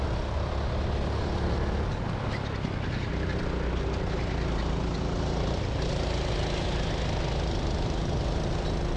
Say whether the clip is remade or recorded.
recorded